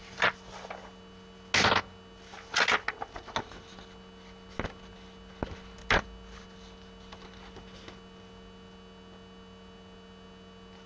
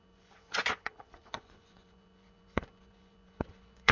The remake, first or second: second